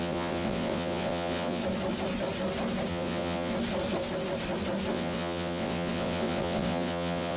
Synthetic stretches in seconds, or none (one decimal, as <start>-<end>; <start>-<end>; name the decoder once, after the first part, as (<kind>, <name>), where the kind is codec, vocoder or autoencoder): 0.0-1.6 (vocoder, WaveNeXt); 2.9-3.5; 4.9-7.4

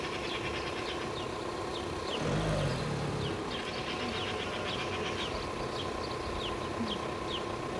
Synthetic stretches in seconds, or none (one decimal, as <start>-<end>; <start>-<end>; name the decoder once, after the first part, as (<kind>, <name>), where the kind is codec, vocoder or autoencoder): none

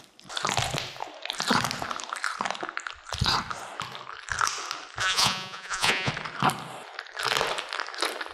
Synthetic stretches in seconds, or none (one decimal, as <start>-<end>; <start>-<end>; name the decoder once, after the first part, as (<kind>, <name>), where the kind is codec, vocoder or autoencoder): 5.0-6.1 (vocoder, Vocos)